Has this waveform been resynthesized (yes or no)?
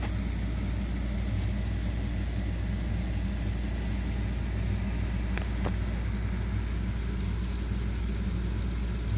no